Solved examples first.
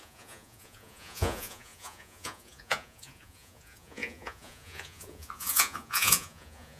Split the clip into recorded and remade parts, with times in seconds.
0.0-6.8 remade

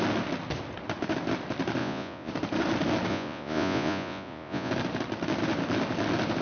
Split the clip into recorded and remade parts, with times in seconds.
0.0-1.8 recorded; 1.8-2.3 remade; 2.3-3.1 recorded; 3.1-4.7 remade; 4.7-6.4 recorded

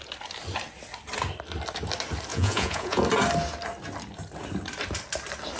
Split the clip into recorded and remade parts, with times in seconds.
0.0-2.3 recorded; 2.3-3.0 remade; 3.0-5.6 recorded

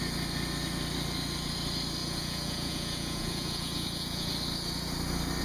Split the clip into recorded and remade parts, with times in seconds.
0.0-2.0 recorded; 2.0-4.3 remade; 4.3-5.4 recorded

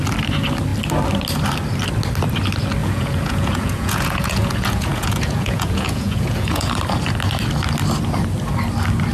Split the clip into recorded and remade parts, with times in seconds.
0.0-2.8 recorded; 2.8-6.7 remade; 6.7-9.1 recorded

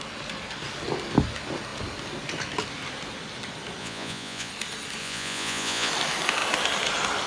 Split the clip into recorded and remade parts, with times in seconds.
0.0-3.8 recorded; 3.8-4.5 remade; 4.5-5.0 recorded; 5.0-5.9 remade; 5.9-7.3 recorded

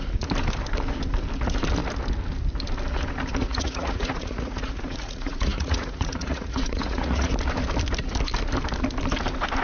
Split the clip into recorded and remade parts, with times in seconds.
0.0-3.4 recorded; 3.4-7.3 remade; 7.3-9.6 recorded

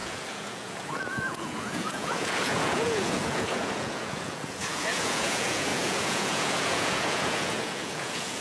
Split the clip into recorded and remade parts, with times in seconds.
0.0-8.4 remade